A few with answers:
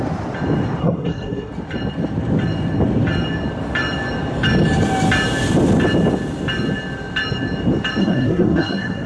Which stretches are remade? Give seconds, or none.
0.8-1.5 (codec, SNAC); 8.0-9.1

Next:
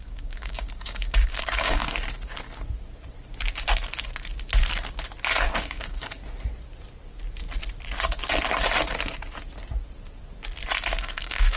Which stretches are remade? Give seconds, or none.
0.0-1.8 (codec, DAC); 5.5-6.2; 11.0-11.6

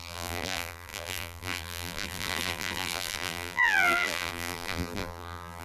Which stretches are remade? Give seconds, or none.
0.0-5.6 (vocoder, BigVGAN v2)

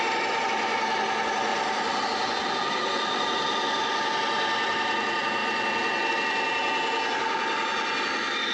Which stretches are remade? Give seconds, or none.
none